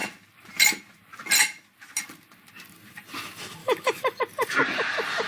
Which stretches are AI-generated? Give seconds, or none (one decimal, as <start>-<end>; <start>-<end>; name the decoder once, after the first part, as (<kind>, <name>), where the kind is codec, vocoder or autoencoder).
3.6-4.2 (autoencoder, DAC-VAE)